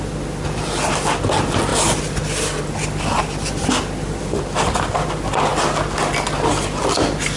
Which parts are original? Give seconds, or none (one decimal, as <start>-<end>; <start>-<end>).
0.0-7.4